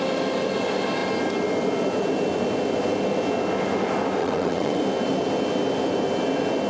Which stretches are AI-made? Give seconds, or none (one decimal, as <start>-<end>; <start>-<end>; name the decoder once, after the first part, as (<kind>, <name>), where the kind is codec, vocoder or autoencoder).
4.2-4.8 (vocoder, WaveNeXt)